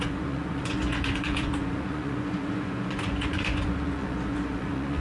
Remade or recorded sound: remade